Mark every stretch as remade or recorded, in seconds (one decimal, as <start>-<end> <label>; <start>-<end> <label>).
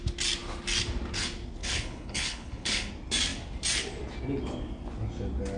0.0-1.6 recorded; 1.6-2.9 remade; 2.9-5.6 recorded